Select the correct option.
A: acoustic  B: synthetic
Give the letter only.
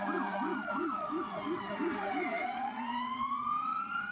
B